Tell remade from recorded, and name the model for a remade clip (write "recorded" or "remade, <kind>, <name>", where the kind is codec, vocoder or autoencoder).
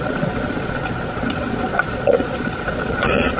remade, vocoder, Vocos